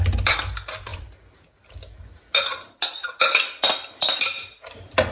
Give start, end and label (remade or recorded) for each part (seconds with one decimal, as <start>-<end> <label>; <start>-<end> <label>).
0.0-5.1 recorded